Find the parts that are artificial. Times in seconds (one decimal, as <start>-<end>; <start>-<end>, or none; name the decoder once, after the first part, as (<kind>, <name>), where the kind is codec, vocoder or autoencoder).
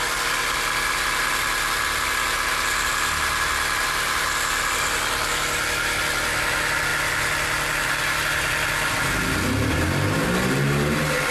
none